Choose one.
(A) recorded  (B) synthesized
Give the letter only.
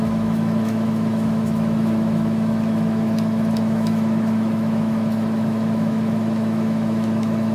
B